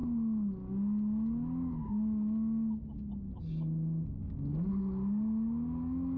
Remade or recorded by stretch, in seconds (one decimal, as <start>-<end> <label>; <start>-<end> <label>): 0.0-6.2 recorded